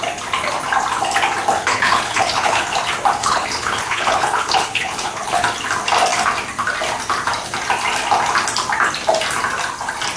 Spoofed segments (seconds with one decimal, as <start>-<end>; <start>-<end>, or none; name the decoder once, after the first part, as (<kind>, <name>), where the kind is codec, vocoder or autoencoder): 1.6-2.6 (codec, HILCodec); 3.2-5.4